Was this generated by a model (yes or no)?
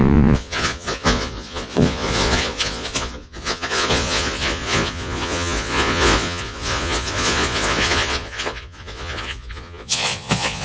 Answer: yes